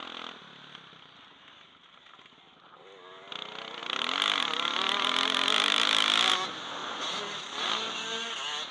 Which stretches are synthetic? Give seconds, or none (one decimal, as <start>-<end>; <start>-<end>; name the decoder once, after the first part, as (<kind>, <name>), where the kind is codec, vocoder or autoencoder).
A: none